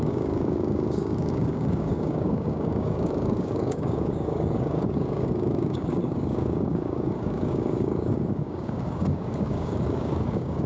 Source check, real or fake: fake